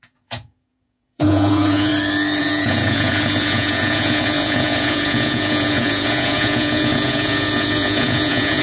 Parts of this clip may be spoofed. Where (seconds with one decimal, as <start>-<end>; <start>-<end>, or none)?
0.0-1.9; 2.4-8.6